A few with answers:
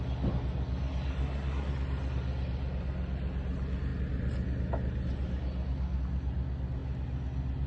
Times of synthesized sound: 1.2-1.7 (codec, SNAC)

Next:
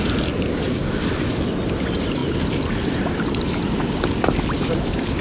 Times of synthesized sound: none

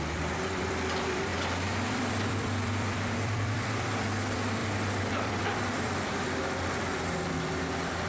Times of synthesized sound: 0.0-1.3 (vocoder, BigVGAN v2); 1.9-8.1

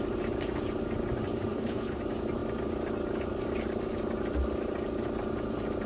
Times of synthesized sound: 1.5-2.0 (codec, HILCodec)

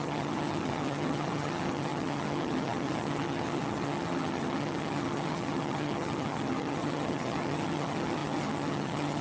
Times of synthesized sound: 0.0-9.2 (vocoder, HiFi-GAN)

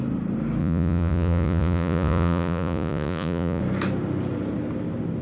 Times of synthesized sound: 0.6-3.6 (vocoder, Vocos)